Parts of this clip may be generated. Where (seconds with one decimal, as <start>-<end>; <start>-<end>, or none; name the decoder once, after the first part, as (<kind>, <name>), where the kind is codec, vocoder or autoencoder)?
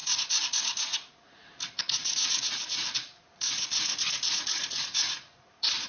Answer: 0.0-5.9 (vocoder, Vocos)